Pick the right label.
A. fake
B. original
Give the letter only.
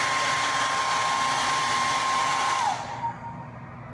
B